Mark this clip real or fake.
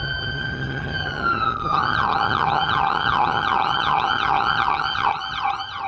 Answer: fake